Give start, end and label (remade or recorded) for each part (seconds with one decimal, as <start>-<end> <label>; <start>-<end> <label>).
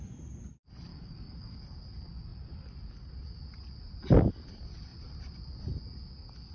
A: 0.0-0.9 recorded; 0.9-1.6 remade; 1.6-6.5 recorded